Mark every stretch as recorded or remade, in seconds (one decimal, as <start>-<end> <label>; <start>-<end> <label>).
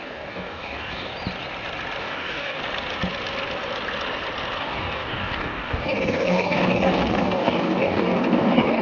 0.0-1.1 remade; 1.1-2.0 recorded; 2.0-2.6 remade; 2.6-4.6 recorded; 4.6-8.8 remade